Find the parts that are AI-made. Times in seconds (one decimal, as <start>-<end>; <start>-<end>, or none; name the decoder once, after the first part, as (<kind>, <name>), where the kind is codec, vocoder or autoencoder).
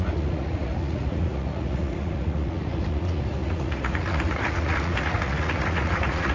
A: 0.0-6.3 (vocoder, Vocos)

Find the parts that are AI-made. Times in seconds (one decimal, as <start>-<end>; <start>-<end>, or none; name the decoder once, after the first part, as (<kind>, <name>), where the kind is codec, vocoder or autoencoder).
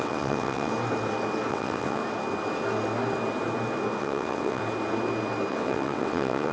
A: 0.0-0.7 (vocoder, WaveNeXt); 1.5-2.0; 4.0-4.6; 5.5-6.5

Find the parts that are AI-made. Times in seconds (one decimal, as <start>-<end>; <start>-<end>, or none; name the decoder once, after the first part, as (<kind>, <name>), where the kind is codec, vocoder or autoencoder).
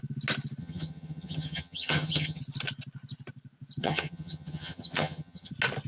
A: 0.6-2.4 (vocoder, HiFi-GAN); 3.8-5.5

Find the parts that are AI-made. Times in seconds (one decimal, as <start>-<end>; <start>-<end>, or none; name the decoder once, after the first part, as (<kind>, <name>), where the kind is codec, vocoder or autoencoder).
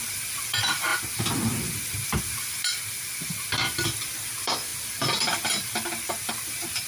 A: 0.0-0.9 (vocoder, BigVGAN v2); 2.2-6.9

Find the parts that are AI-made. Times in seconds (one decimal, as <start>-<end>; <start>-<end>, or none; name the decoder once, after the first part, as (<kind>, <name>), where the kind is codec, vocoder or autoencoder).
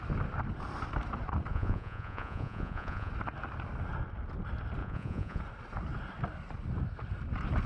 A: 1.5-3.1 (vocoder, Vocos); 4.8-5.4